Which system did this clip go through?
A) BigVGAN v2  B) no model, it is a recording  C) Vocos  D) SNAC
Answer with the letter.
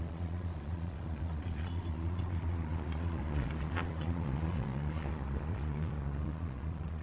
C